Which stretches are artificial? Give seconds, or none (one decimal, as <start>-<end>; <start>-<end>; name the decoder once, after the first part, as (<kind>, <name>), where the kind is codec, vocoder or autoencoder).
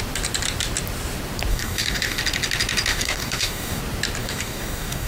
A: 1.5-2.2 (codec, DAC); 2.9-3.8; 4.2-5.1